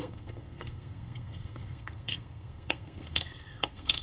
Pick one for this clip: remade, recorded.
remade